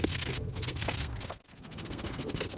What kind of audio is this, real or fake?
fake